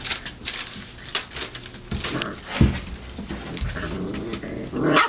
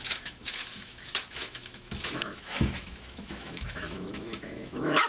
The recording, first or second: first